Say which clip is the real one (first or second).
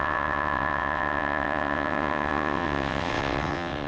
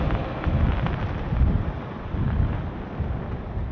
second